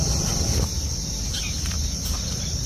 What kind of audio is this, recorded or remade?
recorded